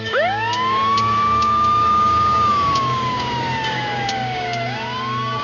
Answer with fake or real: fake